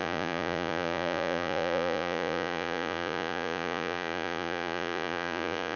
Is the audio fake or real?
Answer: fake